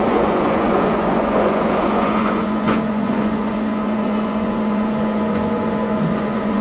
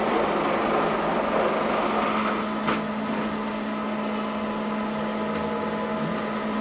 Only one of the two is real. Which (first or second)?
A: second